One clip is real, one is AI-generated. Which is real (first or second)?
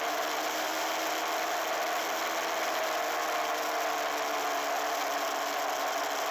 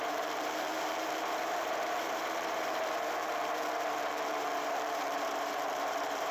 first